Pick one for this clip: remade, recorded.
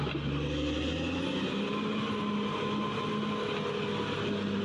recorded